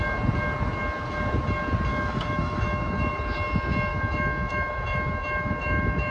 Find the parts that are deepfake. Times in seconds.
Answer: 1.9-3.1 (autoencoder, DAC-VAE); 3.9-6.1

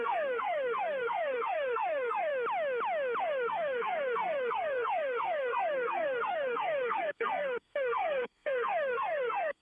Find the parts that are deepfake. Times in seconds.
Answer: 0.0-2.3 (codec, SNAC); 3.2-9.6

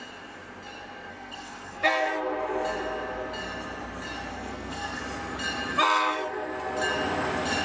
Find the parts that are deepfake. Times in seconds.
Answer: 1.1-2.1 (codec, SNAC); 4.3-5.0